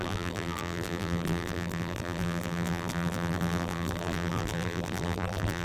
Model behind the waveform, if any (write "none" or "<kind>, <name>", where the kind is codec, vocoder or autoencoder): vocoder, BigVGAN v2